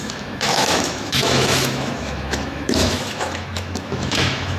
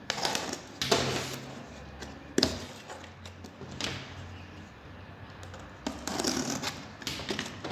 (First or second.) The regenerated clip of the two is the first